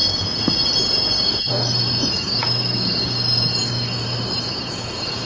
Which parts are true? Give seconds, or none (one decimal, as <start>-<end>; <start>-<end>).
0.0-1.5